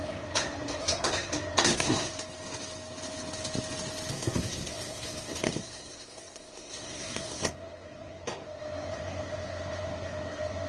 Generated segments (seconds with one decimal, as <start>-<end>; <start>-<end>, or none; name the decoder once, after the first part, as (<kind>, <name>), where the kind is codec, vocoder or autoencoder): 0.0-2.1 (codec, SNAC); 4.1-10.7